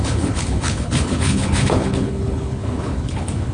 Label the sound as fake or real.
fake